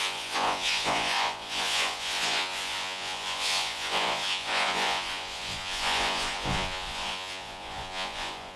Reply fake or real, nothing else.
fake